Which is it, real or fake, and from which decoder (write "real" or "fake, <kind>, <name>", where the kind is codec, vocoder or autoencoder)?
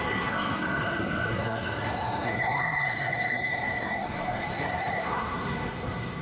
fake, codec, SNAC